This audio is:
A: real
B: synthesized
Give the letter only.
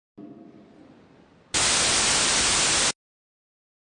A